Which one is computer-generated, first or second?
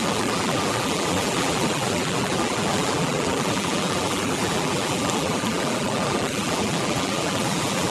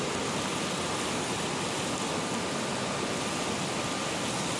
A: first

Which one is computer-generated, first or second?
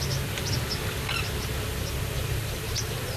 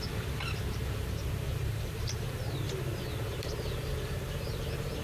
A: second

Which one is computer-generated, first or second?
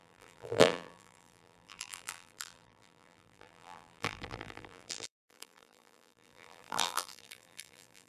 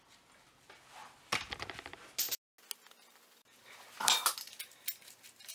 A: first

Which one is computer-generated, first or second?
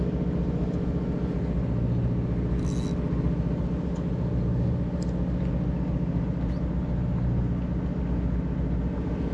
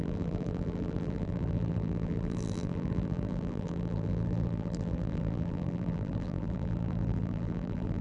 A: second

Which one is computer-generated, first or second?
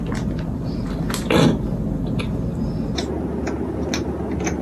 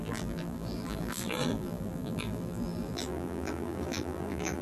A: second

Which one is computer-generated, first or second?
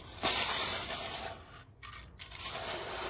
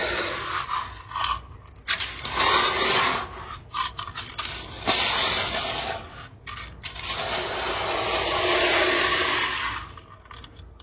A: first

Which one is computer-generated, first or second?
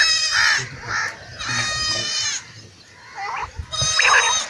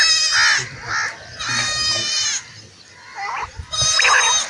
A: first